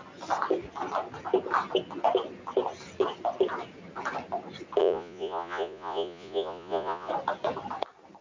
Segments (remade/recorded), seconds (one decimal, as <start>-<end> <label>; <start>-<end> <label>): 0.0-4.8 recorded; 4.8-7.1 remade; 7.1-8.2 recorded